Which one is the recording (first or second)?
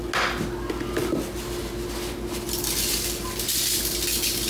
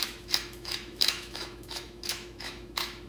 first